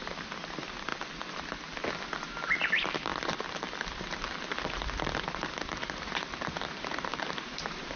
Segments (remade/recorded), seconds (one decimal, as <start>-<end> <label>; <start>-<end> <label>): 0.0-0.9 remade; 0.9-2.7 recorded; 2.7-3.1 remade; 3.1-5.8 recorded; 5.8-8.0 remade